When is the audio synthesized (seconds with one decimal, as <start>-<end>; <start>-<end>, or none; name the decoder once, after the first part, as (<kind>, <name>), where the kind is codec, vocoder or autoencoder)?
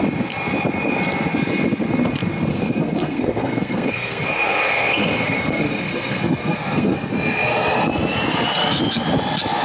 2.5-7.1 (codec, SNAC)